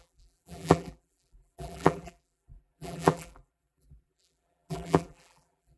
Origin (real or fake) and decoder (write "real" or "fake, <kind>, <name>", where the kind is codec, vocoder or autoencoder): fake, vocoder, BigVGAN v2